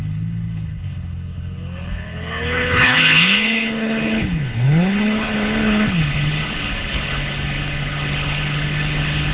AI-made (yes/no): yes